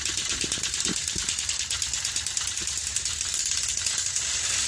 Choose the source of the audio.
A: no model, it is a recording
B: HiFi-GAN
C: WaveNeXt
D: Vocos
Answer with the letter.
A